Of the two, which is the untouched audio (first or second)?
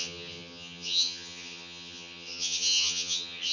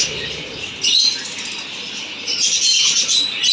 second